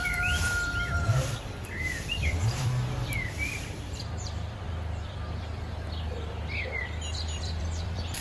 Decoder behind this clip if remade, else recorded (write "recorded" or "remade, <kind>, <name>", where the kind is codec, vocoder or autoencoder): remade, vocoder, BigVGAN v2